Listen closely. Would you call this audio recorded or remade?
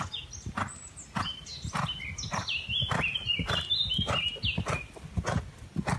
recorded